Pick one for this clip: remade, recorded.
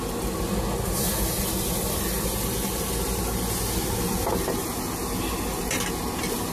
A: recorded